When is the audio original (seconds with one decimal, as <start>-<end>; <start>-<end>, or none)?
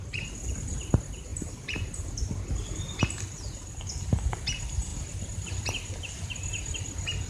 0.0-7.3